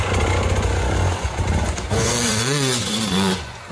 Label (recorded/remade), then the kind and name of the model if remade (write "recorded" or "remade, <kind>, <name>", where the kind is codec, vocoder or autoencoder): remade, vocoder, Vocos